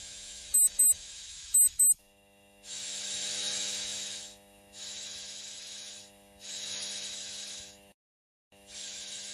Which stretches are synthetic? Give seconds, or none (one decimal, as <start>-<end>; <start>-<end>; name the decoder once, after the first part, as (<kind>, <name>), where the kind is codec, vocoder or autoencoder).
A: 0.0-9.3 (autoencoder, DAC-VAE)